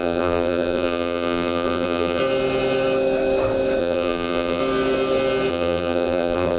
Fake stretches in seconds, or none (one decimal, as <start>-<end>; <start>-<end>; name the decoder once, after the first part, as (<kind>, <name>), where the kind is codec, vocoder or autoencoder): 0.0-2.2 (vocoder, BigVGAN v2); 3.8-4.6; 5.5-6.6